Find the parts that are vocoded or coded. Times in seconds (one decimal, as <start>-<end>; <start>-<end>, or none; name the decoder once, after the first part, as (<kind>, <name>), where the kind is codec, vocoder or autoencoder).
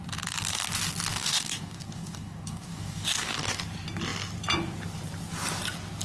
1.1-3.6 (codec, DAC)